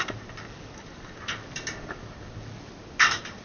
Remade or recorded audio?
recorded